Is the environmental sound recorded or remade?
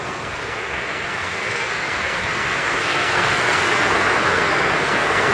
remade